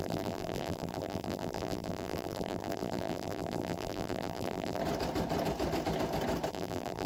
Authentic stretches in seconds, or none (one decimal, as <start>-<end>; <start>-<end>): 4.8-6.5